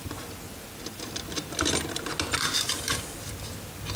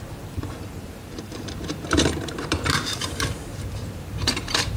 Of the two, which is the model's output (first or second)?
second